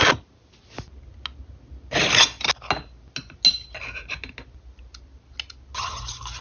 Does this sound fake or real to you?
real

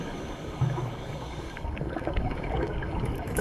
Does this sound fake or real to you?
fake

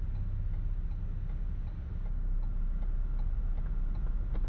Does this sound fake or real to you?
real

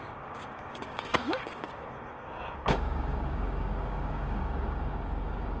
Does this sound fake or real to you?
fake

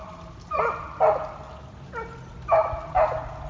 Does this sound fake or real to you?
real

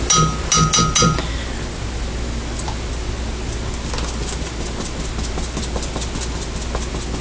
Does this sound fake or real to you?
real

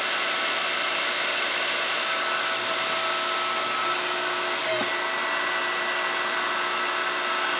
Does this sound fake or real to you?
real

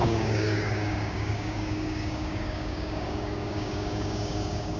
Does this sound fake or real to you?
fake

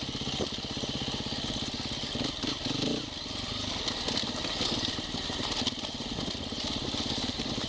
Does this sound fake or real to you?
real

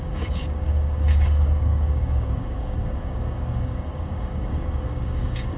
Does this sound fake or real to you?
fake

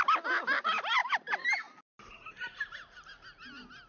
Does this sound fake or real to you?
real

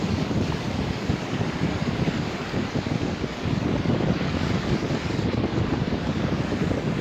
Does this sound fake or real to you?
fake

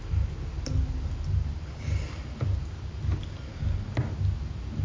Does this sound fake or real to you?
real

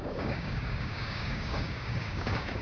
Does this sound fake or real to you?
fake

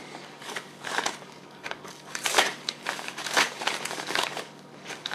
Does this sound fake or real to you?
fake